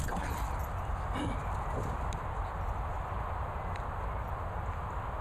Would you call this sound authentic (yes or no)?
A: yes